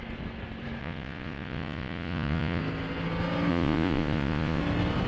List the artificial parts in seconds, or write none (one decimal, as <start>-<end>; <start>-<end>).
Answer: 0.8-2.6; 3.5-4.6